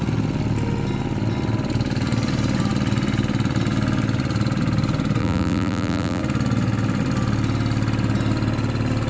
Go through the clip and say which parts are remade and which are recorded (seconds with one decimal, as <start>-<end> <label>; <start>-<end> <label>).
0.0-5.2 recorded; 5.2-6.2 remade; 6.2-9.1 recorded